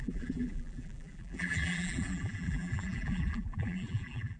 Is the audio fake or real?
fake